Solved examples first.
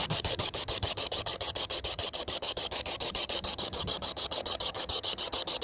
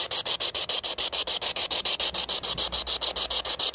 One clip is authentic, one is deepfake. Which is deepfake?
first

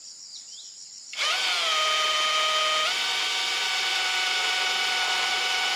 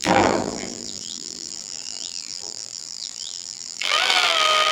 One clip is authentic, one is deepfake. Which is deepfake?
second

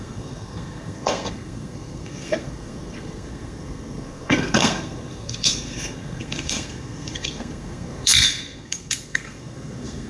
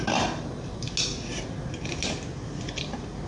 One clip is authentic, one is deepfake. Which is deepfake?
first